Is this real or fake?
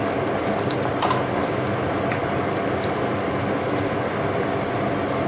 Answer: real